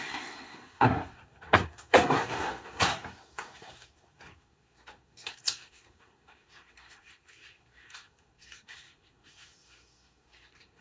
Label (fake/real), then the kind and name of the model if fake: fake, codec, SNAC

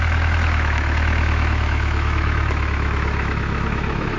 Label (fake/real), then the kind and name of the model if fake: fake, autoencoder, DAC-VAE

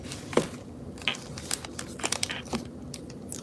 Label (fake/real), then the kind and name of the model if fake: real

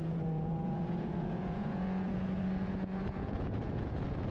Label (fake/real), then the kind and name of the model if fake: fake, vocoder, Vocos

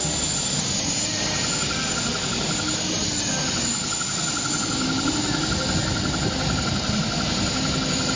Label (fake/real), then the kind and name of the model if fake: real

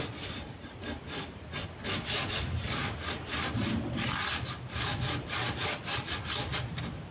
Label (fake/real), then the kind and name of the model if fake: real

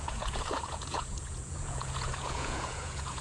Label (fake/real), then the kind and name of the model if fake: fake, vocoder, Vocos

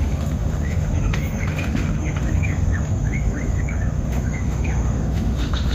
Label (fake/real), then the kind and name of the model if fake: fake, autoencoder, DAC-VAE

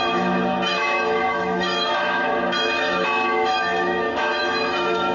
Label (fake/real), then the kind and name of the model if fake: fake, autoencoder, DAC-VAE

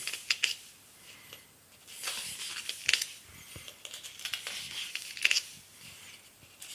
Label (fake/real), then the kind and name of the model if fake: real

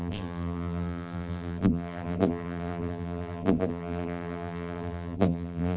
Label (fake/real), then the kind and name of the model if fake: fake, vocoder, BigVGAN v2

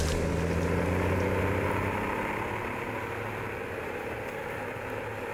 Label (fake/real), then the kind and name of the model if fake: real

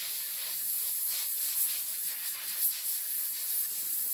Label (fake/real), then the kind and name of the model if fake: real